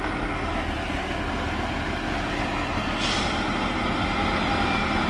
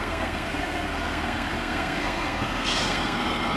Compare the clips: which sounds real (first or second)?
first